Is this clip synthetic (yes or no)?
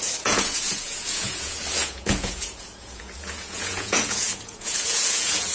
yes